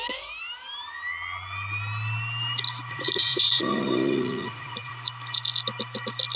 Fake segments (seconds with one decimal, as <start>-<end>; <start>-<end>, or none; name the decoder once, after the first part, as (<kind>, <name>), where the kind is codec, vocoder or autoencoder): 2.9-4.9 (vocoder, Vocos)